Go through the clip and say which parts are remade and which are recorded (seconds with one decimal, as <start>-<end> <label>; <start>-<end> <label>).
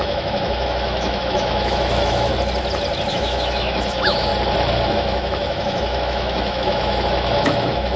0.0-2.3 remade; 2.3-3.1 recorded; 3.1-4.3 remade; 4.3-4.9 recorded; 4.9-8.0 remade